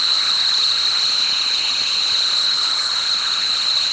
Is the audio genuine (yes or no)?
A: no